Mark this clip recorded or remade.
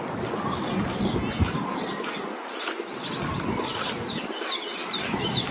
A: recorded